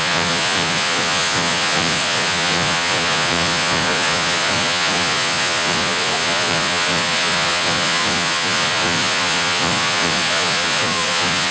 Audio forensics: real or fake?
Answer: fake